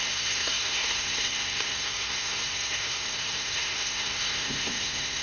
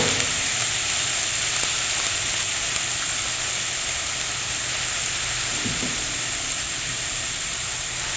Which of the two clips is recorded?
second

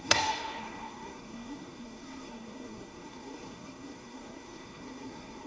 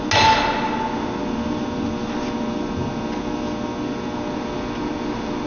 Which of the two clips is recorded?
second